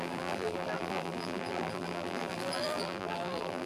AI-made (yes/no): yes